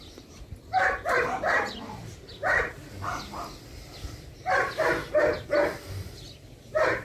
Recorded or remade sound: recorded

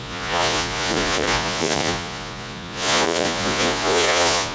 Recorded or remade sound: remade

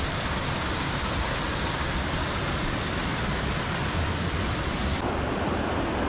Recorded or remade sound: recorded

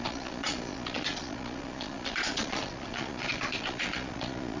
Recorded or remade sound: remade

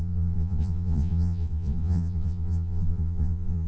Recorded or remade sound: remade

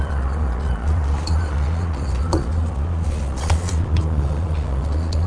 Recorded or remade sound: remade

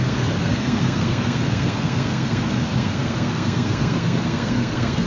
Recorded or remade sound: remade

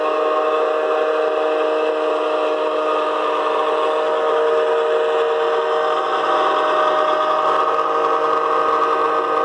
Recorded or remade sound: recorded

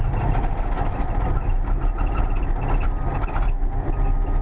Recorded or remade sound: recorded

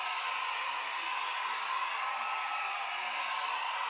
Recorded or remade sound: recorded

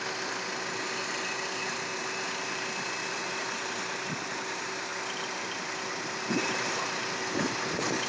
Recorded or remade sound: recorded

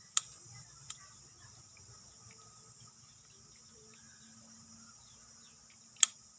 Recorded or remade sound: recorded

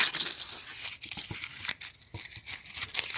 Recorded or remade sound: recorded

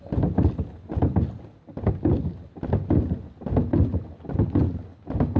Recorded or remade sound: recorded